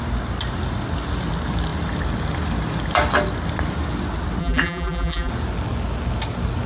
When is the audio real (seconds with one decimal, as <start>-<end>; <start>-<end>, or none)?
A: 0.0-4.4; 5.3-6.7